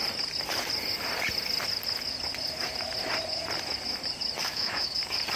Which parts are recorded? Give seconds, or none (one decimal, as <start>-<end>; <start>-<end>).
0.0-4.4; 5.0-5.4